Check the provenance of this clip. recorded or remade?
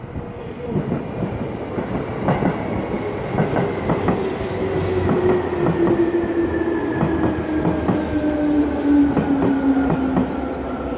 recorded